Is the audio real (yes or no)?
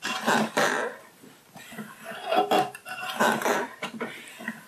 yes